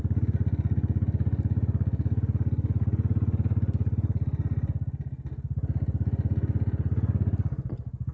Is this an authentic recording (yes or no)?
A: yes